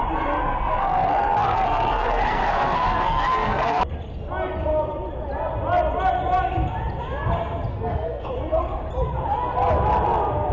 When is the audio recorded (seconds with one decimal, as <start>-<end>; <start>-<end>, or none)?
0.0-0.4; 3.8-7.7; 8.3-10.5